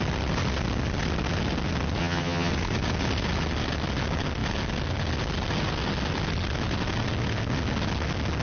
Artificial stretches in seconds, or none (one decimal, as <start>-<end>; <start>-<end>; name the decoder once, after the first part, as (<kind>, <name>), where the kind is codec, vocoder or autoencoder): 2.0-2.5 (vocoder, HiFi-GAN)